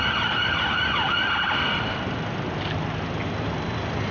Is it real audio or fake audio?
real